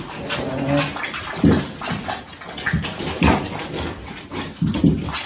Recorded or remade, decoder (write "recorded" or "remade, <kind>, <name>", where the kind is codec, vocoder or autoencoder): recorded